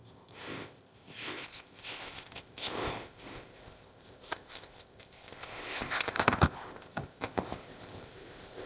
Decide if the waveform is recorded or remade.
remade